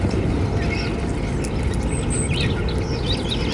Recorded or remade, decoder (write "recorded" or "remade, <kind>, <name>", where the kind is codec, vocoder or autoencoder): recorded